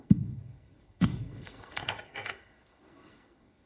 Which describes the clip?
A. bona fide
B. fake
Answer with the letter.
B